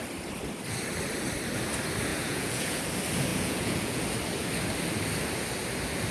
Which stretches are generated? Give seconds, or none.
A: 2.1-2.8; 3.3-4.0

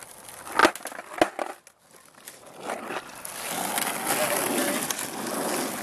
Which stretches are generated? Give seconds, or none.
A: none

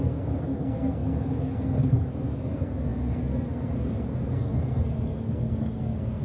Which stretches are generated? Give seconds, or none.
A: 0.0-6.2

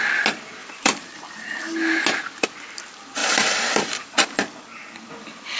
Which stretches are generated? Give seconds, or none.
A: 0.6-1.4; 3.2-5.1

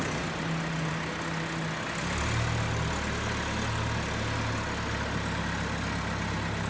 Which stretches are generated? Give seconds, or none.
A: none

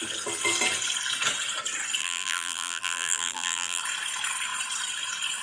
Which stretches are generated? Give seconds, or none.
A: 2.0-3.8

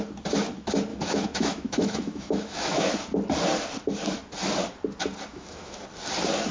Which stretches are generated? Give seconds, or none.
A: 0.9-2.9; 5.3-5.8